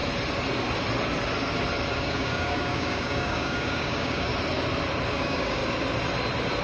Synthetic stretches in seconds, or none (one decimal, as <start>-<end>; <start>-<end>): 1.9-4.3; 5.1-5.6